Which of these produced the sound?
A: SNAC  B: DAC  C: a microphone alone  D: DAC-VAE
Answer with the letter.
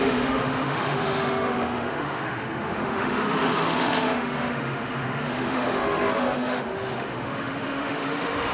D